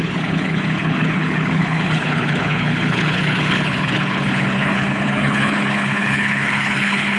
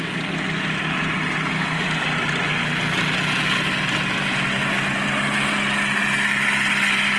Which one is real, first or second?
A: second